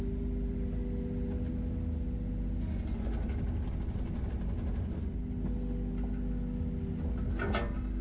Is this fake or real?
real